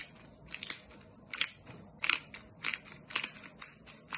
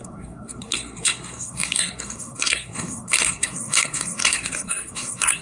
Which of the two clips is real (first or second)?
first